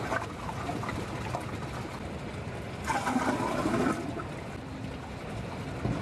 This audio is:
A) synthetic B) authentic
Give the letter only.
B